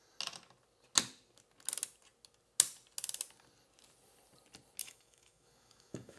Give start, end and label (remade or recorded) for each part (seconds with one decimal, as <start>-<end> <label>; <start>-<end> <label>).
0.0-4.8 recorded; 4.8-6.2 remade